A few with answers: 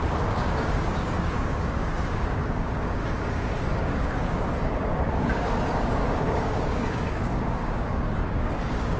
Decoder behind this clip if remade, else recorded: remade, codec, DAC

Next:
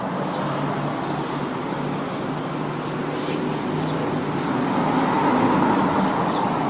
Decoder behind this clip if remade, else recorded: recorded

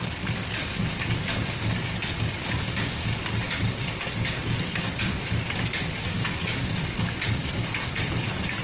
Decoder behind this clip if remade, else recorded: remade, codec, DAC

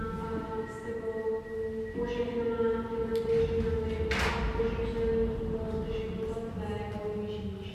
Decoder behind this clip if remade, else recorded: recorded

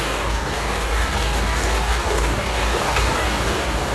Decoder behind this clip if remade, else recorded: remade, codec, DAC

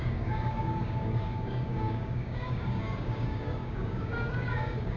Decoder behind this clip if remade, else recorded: remade, codec, DAC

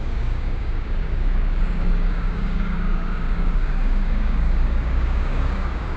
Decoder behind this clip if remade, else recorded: remade, codec, DAC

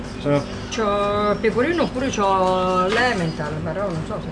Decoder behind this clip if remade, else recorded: recorded